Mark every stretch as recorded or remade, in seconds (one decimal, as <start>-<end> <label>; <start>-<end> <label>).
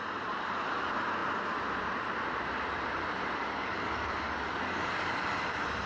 0.0-3.4 recorded; 3.4-5.2 remade; 5.2-5.9 recorded